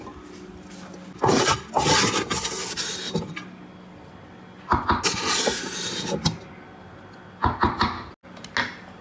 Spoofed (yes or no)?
no